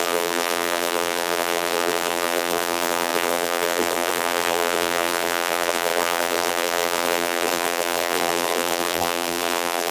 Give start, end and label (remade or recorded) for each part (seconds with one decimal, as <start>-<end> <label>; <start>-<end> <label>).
0.0-9.9 remade

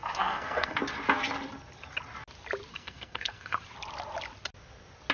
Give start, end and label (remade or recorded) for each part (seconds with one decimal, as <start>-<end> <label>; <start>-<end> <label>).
0.0-0.8 remade; 0.8-2.7 recorded; 2.7-3.6 remade; 3.6-5.1 recorded

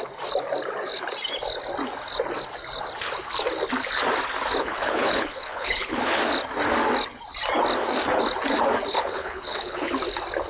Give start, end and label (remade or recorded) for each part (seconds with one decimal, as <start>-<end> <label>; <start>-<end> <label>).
0.0-4.6 recorded; 4.6-6.2 remade; 6.2-8.9 recorded; 8.9-9.9 remade; 9.9-10.5 recorded